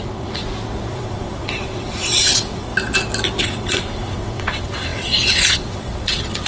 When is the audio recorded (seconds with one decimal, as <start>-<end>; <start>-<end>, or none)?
0.4-0.9; 2.7-3.4

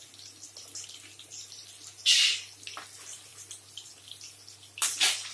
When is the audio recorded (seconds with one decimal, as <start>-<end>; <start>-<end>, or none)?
0.0-5.3